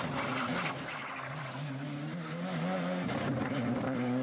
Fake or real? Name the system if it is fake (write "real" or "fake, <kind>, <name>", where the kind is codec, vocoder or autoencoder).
real